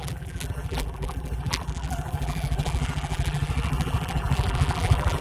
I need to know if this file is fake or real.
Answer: fake